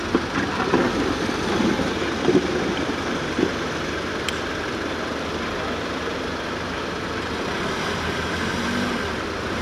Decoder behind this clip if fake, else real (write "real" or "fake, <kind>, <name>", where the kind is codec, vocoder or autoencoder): real